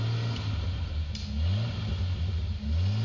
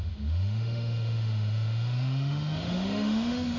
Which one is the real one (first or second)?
first